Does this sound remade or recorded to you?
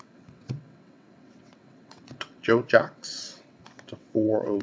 remade